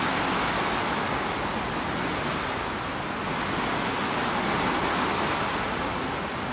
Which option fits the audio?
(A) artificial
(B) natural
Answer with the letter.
B